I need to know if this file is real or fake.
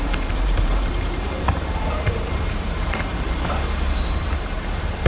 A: fake